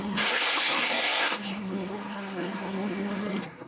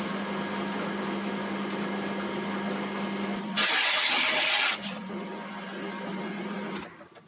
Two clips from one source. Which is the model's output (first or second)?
first